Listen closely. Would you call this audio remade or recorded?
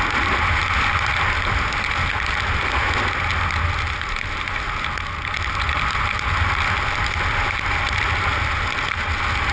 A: recorded